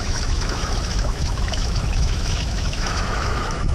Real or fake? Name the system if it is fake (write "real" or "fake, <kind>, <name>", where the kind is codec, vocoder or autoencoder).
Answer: fake, autoencoder, DAC-VAE